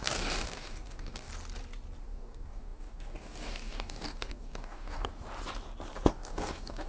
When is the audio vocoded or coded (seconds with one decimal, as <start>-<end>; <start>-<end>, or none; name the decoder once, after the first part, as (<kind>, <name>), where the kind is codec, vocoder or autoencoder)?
0.0-1.3 (codec, DAC); 2.0-5.1; 6.1-6.9